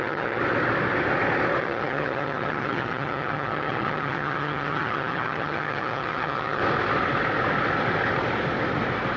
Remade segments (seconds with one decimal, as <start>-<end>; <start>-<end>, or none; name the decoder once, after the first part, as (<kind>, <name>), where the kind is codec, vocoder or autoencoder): 0.0-0.4 (vocoder, HiFi-GAN); 1.6-6.6